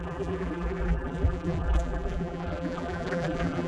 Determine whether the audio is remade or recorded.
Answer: remade